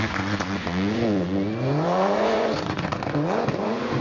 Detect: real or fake fake